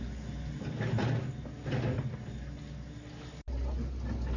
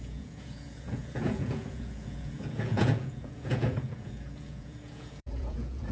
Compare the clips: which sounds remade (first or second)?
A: second